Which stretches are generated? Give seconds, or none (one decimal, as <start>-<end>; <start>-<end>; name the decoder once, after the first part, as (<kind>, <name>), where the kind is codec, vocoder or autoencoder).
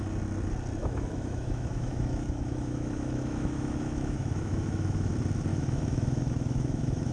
0.8-5.1 (autoencoder, DAC-VAE); 5.5-7.1